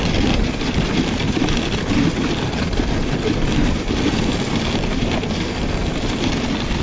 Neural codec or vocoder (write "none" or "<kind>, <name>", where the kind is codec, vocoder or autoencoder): none